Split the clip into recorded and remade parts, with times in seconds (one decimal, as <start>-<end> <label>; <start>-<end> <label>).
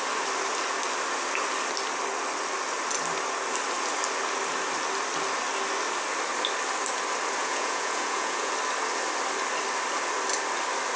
0.0-7.4 recorded; 7.4-8.5 remade; 8.5-11.0 recorded